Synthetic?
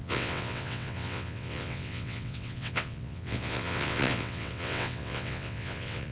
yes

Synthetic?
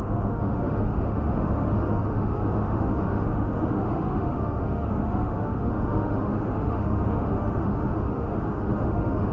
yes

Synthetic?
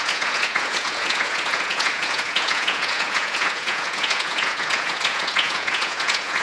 yes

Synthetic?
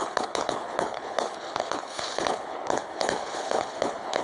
yes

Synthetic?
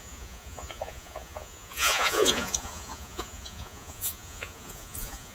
yes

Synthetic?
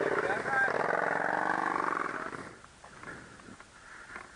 no